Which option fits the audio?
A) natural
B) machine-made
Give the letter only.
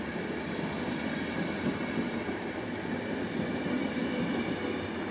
A